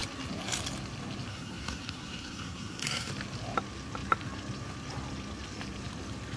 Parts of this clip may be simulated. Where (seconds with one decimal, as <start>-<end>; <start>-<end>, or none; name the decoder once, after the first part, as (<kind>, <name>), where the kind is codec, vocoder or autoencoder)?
1.3-3.1 (codec, SNAC)